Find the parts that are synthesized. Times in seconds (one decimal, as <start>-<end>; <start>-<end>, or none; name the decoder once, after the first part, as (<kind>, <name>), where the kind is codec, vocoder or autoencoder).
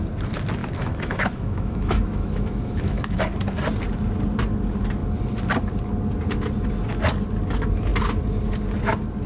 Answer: 0.6-3.2 (autoencoder, DAC-VAE)